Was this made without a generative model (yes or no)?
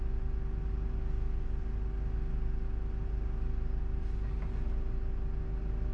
yes